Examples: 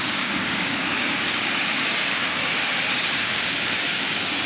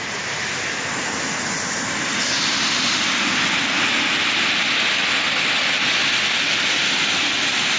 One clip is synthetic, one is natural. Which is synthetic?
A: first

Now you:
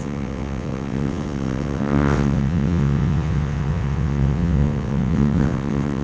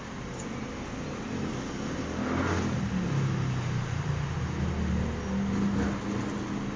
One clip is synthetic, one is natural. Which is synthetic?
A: first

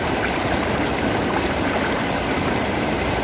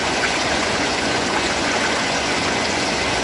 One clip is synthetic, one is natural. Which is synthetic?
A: second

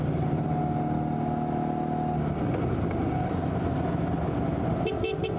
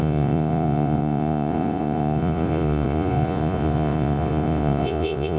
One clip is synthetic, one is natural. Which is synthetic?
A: second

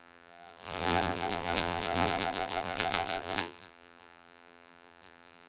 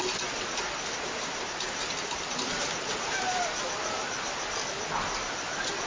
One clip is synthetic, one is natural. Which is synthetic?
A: first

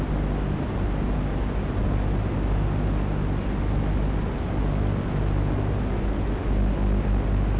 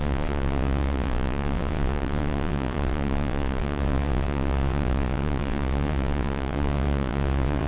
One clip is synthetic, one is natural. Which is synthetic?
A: second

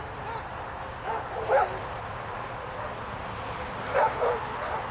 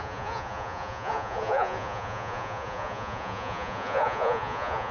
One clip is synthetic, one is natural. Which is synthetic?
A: second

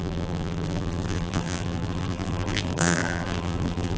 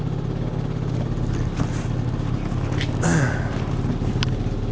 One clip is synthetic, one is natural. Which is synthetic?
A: first